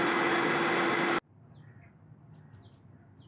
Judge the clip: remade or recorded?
recorded